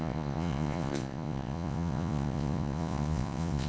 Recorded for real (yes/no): no